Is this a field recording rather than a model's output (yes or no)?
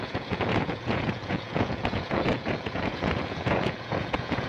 no